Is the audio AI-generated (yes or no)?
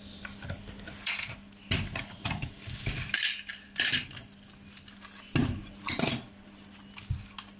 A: no